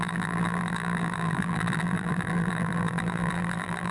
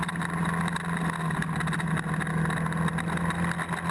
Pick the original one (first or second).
second